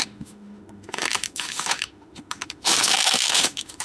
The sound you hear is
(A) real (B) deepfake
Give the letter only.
B